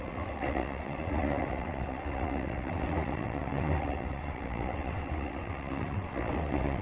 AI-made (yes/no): yes